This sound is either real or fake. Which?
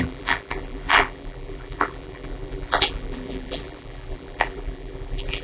fake